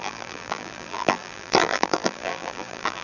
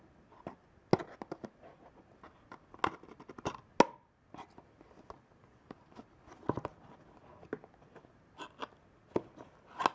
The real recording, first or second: second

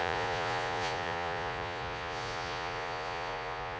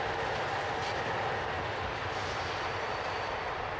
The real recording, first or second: second